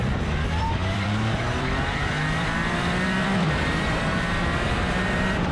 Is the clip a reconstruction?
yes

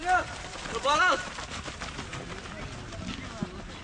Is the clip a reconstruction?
no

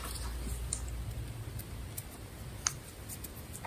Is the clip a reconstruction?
no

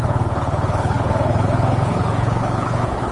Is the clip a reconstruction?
yes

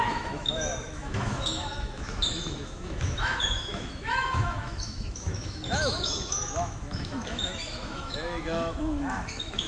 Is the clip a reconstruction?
yes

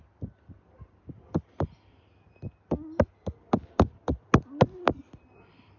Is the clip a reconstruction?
no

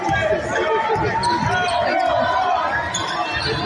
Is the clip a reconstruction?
no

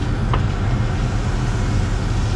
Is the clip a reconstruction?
no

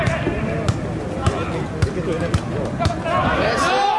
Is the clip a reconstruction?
no